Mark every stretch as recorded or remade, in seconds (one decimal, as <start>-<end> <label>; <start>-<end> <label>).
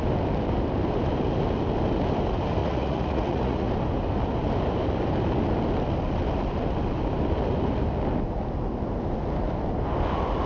0.0-2.6 recorded; 2.6-3.7 remade; 3.7-10.5 recorded